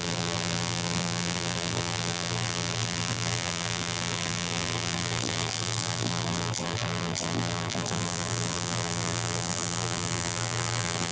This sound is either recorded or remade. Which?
remade